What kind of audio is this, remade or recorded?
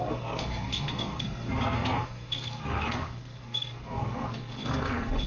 remade